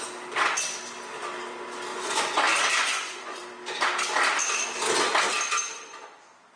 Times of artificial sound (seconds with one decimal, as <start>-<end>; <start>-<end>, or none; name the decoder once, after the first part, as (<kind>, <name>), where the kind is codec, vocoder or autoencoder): 1.9-2.4 (vocoder, Vocos); 2.8-3.4